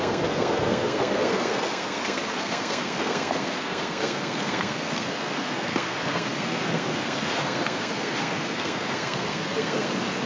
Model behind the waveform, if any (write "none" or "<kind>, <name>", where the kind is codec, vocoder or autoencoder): codec, SNAC